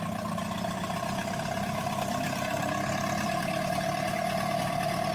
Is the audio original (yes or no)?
yes